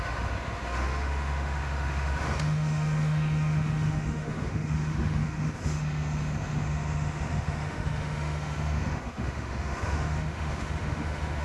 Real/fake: fake